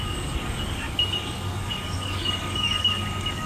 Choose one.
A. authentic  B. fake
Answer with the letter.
B